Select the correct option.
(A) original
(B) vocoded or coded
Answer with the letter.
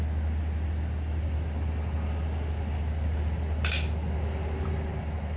A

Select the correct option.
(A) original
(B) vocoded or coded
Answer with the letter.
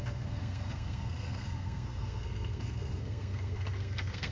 B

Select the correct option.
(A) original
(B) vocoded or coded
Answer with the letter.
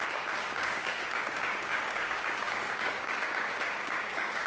B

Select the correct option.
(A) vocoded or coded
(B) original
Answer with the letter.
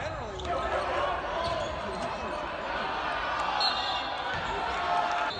B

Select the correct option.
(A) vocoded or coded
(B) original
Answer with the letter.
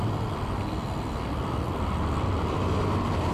B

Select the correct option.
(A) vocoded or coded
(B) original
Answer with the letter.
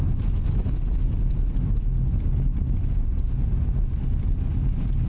B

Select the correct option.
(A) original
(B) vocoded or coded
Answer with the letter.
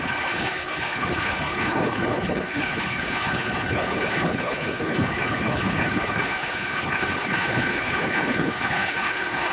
B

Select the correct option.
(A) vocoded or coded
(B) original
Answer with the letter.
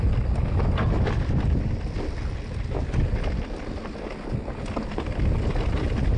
B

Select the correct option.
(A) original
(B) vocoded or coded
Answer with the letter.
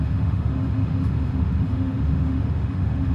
B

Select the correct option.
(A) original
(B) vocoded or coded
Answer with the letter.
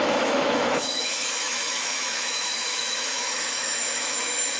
B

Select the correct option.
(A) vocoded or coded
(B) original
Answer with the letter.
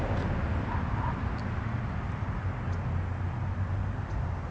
B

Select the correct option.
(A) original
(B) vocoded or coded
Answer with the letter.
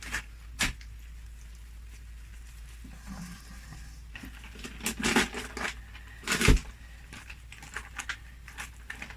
A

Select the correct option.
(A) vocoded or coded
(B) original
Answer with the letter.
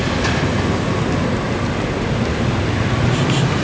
B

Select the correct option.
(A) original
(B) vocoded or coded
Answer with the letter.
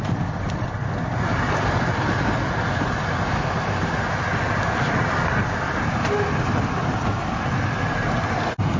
A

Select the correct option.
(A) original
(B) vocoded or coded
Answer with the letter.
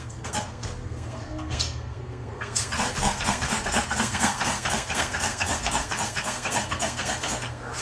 B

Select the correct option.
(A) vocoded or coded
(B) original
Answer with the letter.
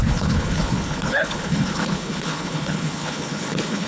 A